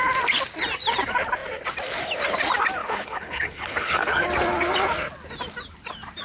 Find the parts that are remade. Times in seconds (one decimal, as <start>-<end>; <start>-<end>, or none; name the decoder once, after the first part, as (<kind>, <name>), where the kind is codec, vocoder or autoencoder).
2.8-4.2 (codec, HILCodec)